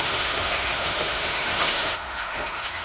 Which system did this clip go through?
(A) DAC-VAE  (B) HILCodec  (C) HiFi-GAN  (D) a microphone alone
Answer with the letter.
A